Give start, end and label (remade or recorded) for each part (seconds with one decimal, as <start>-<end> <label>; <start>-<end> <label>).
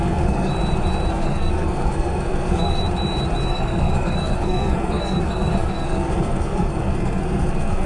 0.0-0.5 remade; 0.5-1.1 recorded; 1.1-2.8 remade; 2.8-3.5 recorded; 3.5-7.9 remade